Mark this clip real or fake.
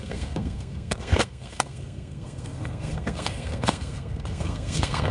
fake